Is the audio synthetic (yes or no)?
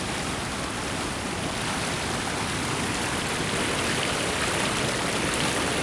no